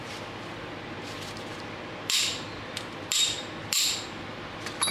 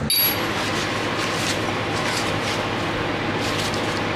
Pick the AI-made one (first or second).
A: first